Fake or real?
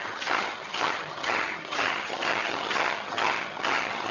fake